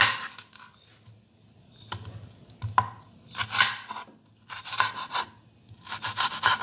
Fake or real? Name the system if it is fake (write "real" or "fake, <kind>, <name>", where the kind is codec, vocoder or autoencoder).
real